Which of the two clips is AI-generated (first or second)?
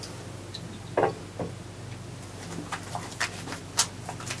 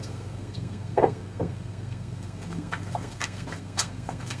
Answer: second